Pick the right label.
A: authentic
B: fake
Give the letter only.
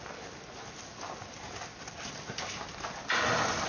A